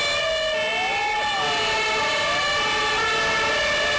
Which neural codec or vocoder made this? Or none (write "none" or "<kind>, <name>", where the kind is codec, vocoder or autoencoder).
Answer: none